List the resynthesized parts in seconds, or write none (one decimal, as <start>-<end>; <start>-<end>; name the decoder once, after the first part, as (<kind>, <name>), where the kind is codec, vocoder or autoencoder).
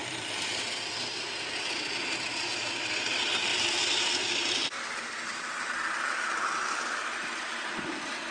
0.0-2.0 (vocoder, BigVGAN v2); 3.5-8.3